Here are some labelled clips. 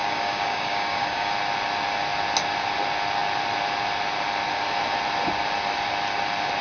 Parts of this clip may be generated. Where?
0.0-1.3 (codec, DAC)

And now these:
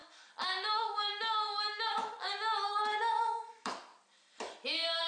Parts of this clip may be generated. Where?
0.7-3.9 (autoencoder, DAC-VAE)

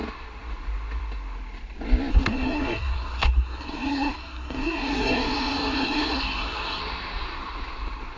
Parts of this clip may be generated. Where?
2.1-6.8 (codec, SNAC)

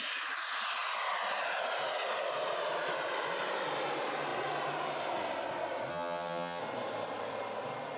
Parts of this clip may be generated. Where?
5.9-6.6 (vocoder, HiFi-GAN)

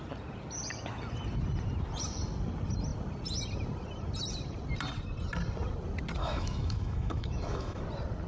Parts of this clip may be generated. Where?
6.2-7.8 (autoencoder, DAC-VAE)